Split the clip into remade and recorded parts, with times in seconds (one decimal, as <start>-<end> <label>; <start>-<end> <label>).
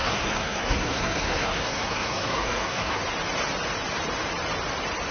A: 0.0-3.0 remade; 3.0-5.1 recorded